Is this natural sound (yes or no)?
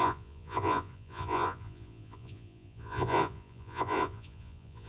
no